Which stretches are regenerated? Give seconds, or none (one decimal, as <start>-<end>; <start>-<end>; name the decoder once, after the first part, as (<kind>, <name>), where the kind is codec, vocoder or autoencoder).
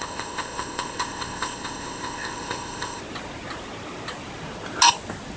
0.0-3.0 (codec, ZipCodec)